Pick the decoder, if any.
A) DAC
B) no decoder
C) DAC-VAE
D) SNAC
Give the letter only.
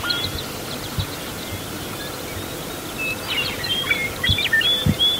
B